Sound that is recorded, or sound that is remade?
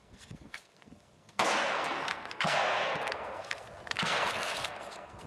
remade